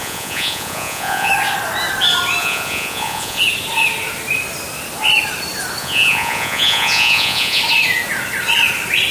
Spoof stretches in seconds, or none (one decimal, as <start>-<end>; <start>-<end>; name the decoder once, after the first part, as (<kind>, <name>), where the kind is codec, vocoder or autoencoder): 0.0-1.3 (vocoder, Vocos); 2.4-3.4; 5.8-7.6